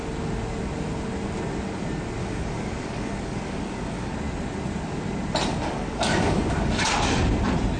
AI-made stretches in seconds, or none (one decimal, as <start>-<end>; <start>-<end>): 2.2-4.1; 5.5-6.8